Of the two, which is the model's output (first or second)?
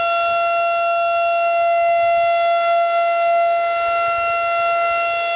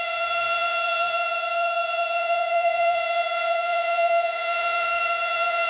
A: second